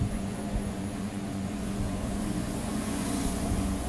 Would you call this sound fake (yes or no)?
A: yes